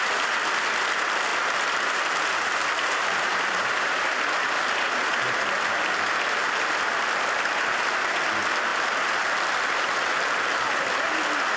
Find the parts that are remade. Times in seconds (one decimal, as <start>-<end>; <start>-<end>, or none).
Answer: 1.3-4.0; 6.4-7.7; 8.7-9.9